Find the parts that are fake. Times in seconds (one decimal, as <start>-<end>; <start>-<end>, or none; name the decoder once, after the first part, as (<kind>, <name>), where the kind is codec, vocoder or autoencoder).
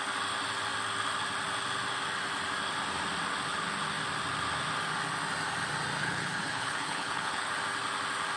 6.0-7.5 (codec, HILCodec)